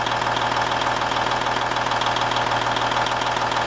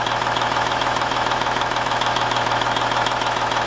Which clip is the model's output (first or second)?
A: second